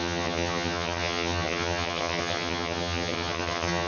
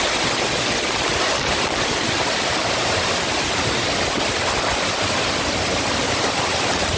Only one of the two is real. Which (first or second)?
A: second